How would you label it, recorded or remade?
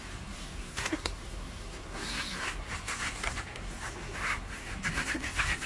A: remade